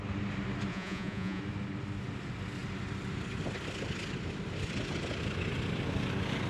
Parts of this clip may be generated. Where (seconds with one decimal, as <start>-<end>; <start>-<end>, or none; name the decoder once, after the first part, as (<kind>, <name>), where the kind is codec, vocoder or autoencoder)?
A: 0.7-1.4 (vocoder, Vocos)